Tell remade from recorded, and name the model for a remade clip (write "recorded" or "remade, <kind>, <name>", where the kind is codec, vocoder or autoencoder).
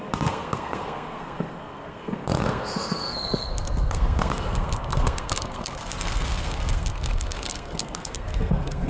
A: remade, codec, SNAC